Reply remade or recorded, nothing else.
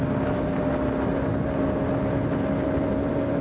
recorded